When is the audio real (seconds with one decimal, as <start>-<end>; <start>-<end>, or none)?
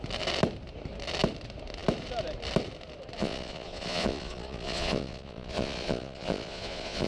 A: 0.0-3.2